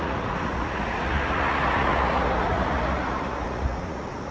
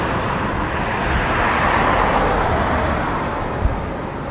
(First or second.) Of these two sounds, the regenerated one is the first